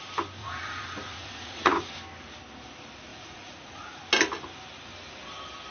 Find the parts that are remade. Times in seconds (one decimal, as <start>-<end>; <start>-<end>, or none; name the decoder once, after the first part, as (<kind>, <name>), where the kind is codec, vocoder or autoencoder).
0.4-1.9 (vocoder, Vocos); 3.1-4.0